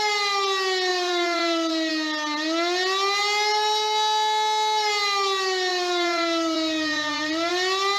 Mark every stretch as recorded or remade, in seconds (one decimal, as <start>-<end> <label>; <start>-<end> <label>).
0.0-0.9 recorded; 0.9-1.9 remade; 1.9-5.7 recorded; 5.7-7.5 remade; 7.5-8.0 recorded